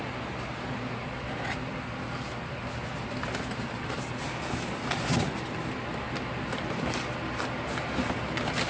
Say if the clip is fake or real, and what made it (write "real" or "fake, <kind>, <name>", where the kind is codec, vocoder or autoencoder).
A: real